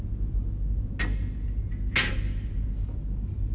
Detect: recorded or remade recorded